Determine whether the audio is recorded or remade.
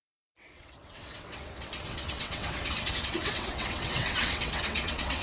remade